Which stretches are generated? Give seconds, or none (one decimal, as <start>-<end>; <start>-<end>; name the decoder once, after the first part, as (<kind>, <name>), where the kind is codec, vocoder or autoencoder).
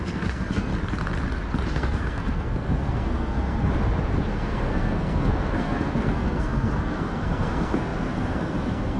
0.0-0.7 (codec, SNAC); 1.7-3.7; 4.3-9.0